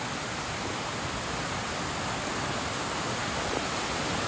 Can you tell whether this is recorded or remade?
recorded